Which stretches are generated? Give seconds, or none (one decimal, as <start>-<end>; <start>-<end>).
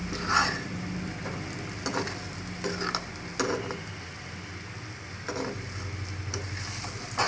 none